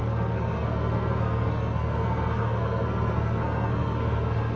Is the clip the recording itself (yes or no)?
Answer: no